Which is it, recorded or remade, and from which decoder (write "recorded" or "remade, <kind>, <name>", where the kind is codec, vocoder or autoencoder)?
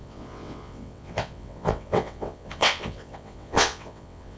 remade, vocoder, WaveNeXt